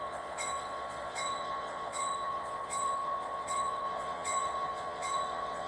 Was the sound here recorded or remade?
remade